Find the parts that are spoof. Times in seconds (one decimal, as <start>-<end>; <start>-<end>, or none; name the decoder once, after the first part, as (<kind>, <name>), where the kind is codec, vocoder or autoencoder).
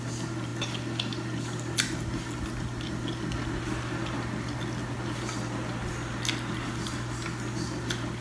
none